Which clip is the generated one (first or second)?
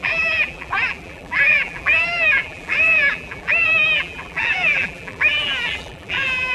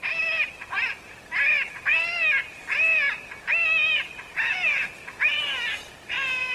first